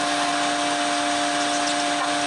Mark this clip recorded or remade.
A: recorded